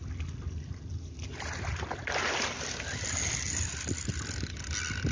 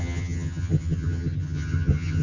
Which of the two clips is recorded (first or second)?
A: first